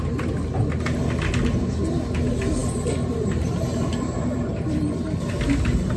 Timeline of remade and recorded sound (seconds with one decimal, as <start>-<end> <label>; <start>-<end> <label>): 0.0-6.0 recorded